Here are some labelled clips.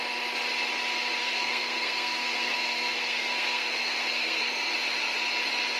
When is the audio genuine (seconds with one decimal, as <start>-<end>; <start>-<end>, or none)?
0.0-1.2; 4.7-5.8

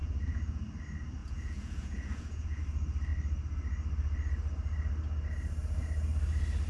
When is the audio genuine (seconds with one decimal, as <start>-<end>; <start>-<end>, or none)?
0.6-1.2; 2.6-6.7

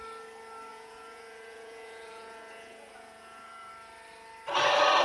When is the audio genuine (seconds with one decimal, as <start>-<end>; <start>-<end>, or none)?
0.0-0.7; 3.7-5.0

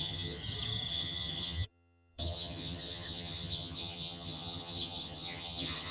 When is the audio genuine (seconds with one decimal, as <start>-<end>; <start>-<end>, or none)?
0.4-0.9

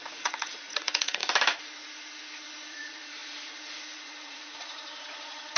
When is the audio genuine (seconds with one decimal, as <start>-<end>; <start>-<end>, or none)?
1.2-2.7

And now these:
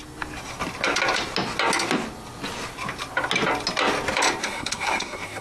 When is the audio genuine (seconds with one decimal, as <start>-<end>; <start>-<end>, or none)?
0.0-4.4

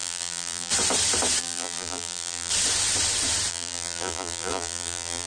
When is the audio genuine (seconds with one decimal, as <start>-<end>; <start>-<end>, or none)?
0.7-1.4; 2.5-3.5

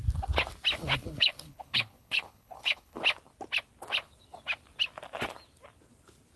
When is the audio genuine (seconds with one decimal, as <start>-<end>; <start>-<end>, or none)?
0.0-0.8; 3.0-6.4